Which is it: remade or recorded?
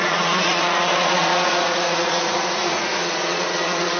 remade